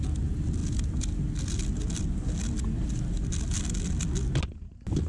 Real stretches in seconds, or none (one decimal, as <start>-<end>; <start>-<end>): 0.0-5.1